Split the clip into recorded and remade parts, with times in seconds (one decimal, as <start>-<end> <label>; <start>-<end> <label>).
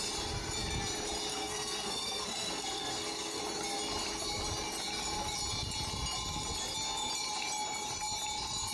0.0-1.3 recorded; 1.3-3.4 remade; 3.4-8.7 recorded